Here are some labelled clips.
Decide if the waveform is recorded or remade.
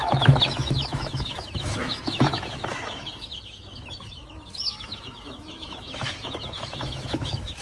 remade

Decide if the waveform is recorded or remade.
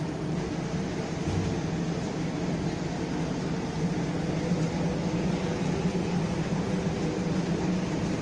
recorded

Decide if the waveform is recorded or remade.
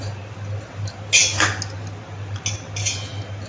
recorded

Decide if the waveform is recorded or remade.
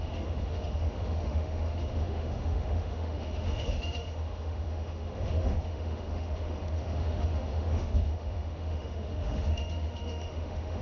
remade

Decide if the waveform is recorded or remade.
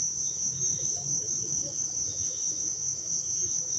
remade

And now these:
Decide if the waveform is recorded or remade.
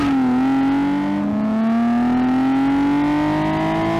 recorded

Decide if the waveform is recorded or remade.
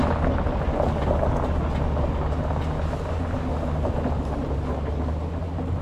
recorded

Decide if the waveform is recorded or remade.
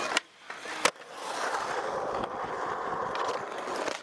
recorded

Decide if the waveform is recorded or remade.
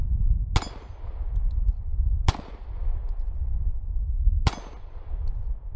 recorded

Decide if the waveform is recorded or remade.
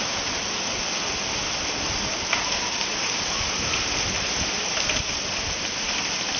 recorded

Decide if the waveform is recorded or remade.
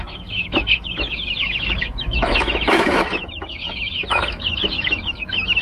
remade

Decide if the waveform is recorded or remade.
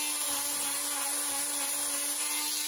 recorded